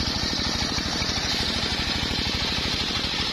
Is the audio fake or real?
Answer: real